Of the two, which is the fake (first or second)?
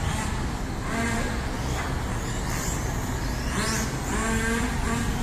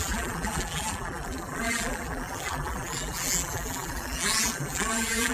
second